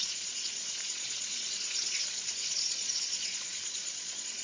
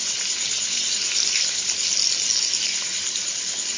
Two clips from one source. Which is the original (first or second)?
second